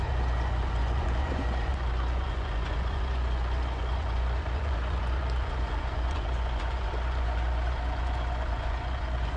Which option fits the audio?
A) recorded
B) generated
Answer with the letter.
B